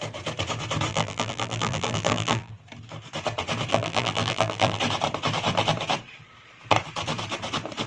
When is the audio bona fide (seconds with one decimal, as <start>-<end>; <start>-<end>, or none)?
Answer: 0.0-0.9; 2.5-3.7; 4.8-7.9